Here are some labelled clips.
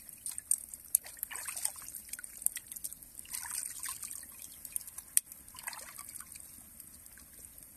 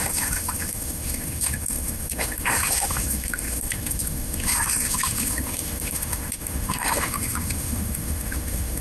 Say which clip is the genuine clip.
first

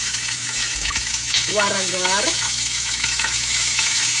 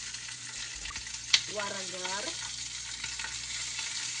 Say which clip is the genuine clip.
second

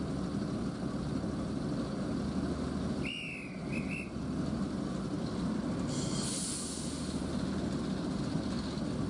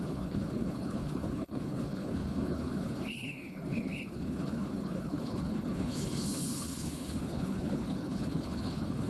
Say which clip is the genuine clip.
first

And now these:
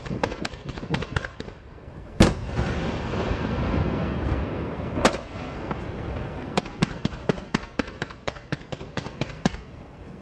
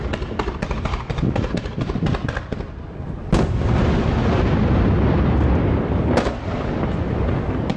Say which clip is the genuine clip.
second